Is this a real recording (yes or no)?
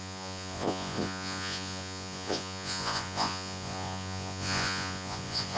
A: no